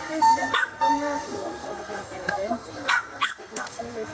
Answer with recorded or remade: remade